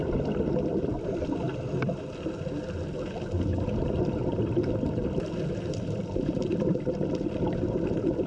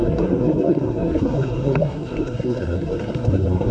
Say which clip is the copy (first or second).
second